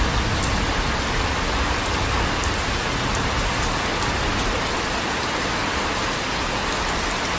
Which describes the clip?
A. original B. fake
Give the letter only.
A